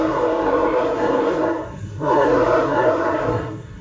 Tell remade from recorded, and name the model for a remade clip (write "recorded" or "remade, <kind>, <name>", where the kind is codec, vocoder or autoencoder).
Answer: remade, codec, SNAC